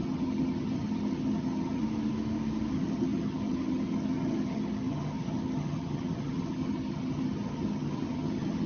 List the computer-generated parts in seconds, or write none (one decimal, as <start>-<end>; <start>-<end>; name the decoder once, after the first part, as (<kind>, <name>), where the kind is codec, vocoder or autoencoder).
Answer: 0.0-1.8 (vocoder, HiFi-GAN); 2.7-8.7